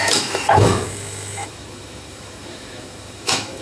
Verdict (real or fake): fake